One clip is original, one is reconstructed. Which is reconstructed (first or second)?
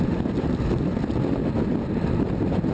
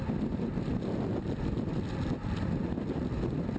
first